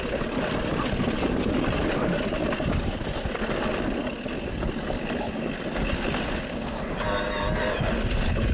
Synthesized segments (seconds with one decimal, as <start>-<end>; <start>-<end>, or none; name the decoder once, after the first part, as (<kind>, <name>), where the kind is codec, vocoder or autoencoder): none

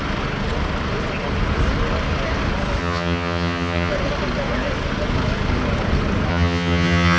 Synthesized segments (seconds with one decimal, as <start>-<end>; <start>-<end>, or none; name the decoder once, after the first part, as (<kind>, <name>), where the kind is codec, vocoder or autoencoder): 2.8-3.9 (vocoder, HiFi-GAN); 6.3-7.2

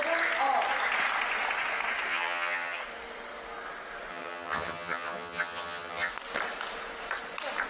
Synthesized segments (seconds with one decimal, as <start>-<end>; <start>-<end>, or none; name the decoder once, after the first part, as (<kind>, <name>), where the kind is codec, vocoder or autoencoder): 2.1-2.8 (vocoder, HiFi-GAN); 4.1-6.1